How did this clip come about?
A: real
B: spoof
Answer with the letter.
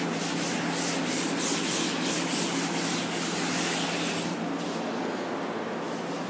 A